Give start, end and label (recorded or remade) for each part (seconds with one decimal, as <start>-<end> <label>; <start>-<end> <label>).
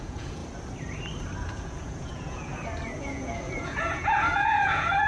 0.0-0.4 remade; 0.4-1.4 recorded; 1.4-2.5 remade; 2.5-3.0 recorded; 3.0-5.1 remade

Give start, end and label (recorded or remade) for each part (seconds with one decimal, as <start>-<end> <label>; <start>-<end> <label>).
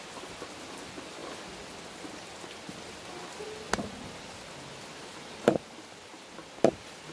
0.0-7.1 recorded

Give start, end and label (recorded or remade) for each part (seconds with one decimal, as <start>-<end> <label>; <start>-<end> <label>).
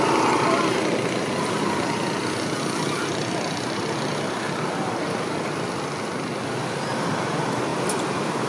0.0-8.5 recorded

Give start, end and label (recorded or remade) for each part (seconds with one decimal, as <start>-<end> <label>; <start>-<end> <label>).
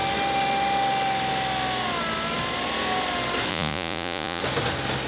0.0-3.5 recorded; 3.5-4.4 remade; 4.4-5.1 recorded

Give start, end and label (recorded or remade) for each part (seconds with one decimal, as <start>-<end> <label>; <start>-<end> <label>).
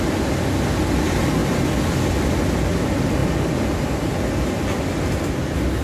0.0-5.8 recorded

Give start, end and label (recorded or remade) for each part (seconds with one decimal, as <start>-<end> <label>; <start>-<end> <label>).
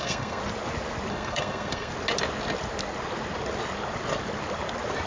0.0-0.4 remade; 0.4-1.1 recorded; 1.1-1.9 remade; 1.9-5.1 recorded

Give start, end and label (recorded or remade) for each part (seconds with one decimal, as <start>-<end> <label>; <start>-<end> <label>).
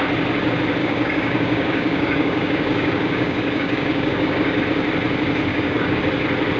0.0-0.8 recorded; 0.8-4.6 remade; 4.6-5.5 recorded; 5.5-6.0 remade; 6.0-6.6 recorded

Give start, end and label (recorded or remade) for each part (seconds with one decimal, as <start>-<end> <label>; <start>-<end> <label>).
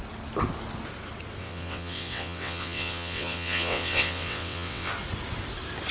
0.0-1.4 recorded; 1.4-4.9 remade; 4.9-5.9 recorded